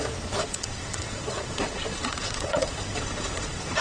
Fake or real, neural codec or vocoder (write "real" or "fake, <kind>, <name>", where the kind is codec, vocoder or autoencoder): fake, vocoder, Vocos